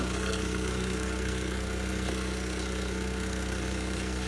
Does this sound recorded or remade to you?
remade